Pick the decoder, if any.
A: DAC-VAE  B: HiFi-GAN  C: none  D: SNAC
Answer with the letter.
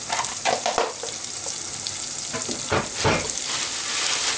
C